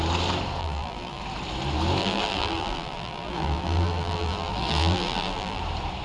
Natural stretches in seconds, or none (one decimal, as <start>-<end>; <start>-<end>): 0.0-0.6; 1.2-2.0; 5.6-6.0